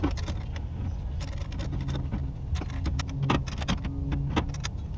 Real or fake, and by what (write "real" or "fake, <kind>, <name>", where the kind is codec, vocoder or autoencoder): real